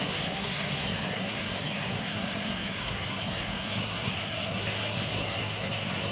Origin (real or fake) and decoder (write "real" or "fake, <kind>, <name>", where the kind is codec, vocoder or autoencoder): fake, codec, SNAC